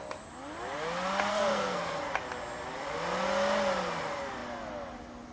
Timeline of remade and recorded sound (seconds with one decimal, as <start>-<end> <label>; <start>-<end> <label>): 0.0-1.3 recorded; 1.3-2.0 remade; 2.0-5.3 recorded